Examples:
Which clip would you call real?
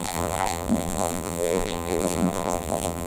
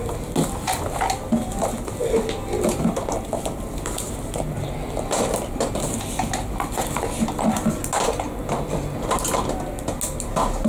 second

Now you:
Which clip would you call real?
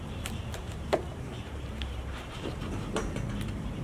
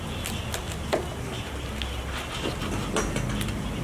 second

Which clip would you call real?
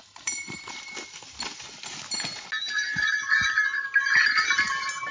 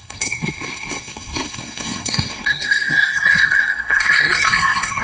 first